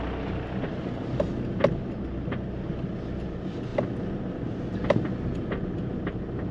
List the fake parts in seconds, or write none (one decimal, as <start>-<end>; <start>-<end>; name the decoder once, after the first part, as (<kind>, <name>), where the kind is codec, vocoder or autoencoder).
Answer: none